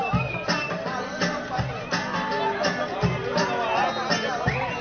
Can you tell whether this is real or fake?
real